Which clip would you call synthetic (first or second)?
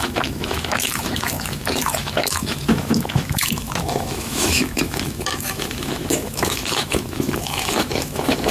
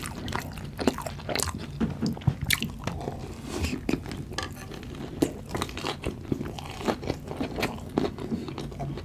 first